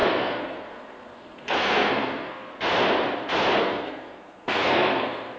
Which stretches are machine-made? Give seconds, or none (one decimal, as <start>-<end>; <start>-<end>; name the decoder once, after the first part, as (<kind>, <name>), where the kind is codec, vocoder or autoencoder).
0.0-2.5 (codec, SNAC); 3.6-5.4